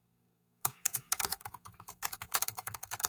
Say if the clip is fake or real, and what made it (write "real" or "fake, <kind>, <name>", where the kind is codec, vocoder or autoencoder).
fake, codec, SNAC